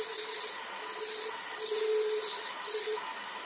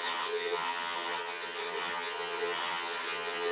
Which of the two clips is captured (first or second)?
first